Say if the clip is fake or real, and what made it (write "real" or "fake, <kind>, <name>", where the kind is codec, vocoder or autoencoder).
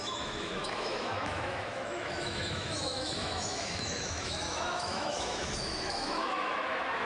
fake, autoencoder, DAC-VAE